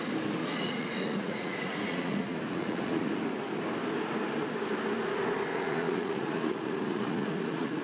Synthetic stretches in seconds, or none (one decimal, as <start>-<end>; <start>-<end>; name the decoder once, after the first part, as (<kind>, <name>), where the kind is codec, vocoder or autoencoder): 0.4-3.1 (vocoder, Vocos); 5.5-7.8